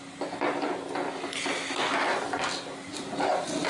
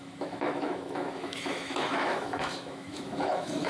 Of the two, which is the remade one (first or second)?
second